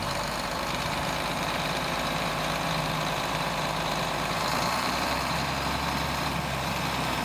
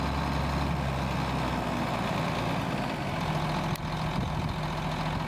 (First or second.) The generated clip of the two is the first